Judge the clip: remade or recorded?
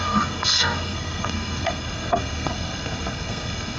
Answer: remade